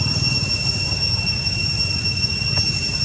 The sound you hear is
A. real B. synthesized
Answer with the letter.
A